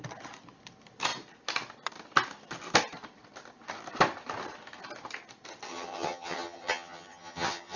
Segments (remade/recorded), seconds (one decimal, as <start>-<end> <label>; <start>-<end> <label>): 0.0-5.7 recorded; 5.7-7.8 remade